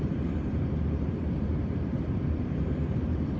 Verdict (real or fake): fake